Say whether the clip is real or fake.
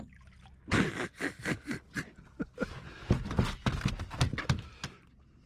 real